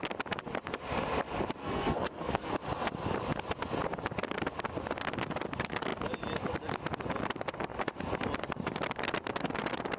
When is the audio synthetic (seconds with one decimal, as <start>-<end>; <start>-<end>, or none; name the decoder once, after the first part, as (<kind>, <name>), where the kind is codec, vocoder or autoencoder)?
1.6-2.5 (codec, SNAC)